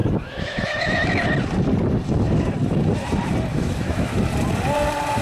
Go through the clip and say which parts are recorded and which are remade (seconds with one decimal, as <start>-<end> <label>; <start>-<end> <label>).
0.0-1.2 remade; 1.2-3.5 recorded; 3.5-4.2 remade; 4.2-5.2 recorded